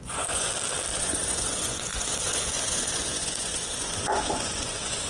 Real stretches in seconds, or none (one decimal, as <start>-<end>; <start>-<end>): 0.5-1.0

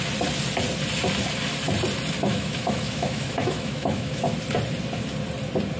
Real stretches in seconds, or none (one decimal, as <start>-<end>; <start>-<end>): 0.0-2.3; 4.2-5.8